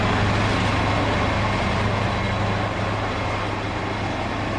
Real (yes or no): yes